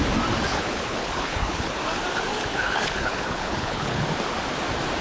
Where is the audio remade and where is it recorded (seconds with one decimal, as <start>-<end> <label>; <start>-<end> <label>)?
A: 0.0-0.5 recorded; 0.5-1.8 remade; 1.8-2.5 recorded; 2.5-4.0 remade; 4.0-5.0 recorded